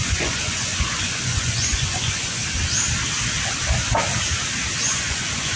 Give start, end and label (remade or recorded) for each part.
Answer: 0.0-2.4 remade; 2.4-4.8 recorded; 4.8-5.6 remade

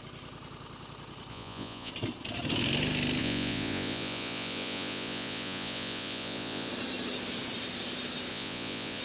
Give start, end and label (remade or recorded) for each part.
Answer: 0.0-1.3 recorded; 1.3-1.9 remade; 1.9-3.2 recorded; 3.2-6.7 remade; 6.7-8.3 recorded; 8.3-9.0 remade

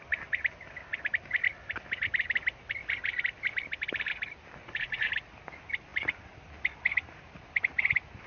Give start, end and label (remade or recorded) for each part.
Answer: 0.0-4.6 recorded; 4.6-5.1 remade; 5.1-8.3 recorded

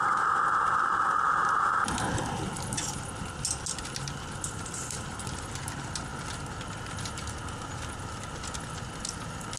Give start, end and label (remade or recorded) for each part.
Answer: 0.0-9.6 recorded

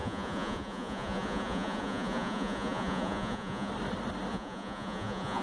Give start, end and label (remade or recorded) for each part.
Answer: 0.0-3.7 remade; 3.7-4.3 recorded; 4.3-5.4 remade

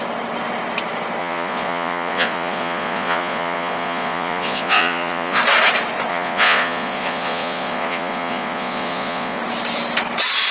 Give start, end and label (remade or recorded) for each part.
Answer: 0.0-1.2 recorded; 1.2-5.4 remade; 5.4-6.1 recorded; 6.1-9.4 remade; 9.4-10.5 recorded

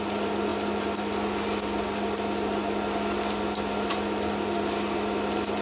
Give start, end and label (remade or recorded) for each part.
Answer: 0.0-5.6 recorded

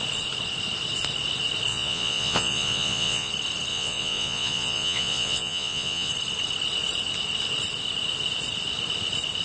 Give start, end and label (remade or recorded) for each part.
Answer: 0.0-1.7 recorded; 1.7-3.3 remade; 3.3-3.7 recorded; 3.7-6.1 remade; 6.1-9.4 recorded